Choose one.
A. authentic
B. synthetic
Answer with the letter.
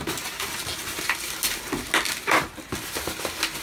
A